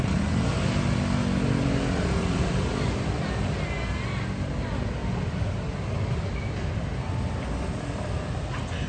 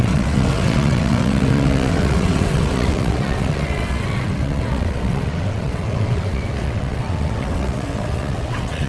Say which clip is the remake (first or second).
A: second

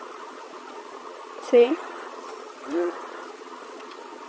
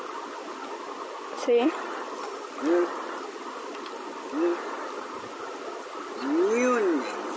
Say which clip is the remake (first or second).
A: first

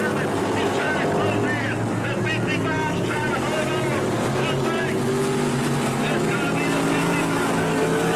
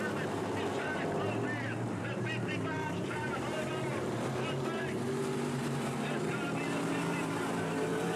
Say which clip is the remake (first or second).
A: second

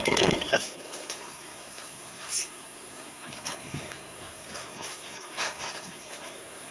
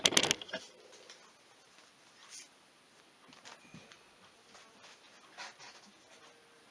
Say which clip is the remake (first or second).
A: first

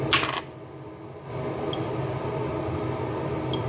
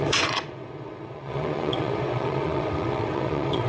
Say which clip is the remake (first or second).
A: second